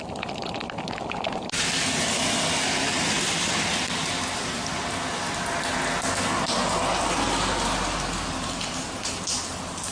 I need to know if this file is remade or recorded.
recorded